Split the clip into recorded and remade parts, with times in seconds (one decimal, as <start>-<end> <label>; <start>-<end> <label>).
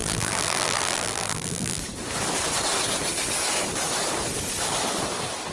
0.0-1.8 remade; 1.8-5.5 recorded